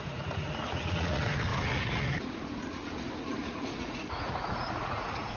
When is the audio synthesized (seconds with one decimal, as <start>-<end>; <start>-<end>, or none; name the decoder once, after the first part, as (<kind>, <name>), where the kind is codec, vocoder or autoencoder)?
0.0-5.4 (vocoder, Vocos)